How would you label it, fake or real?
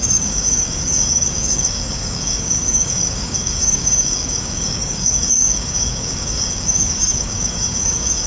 fake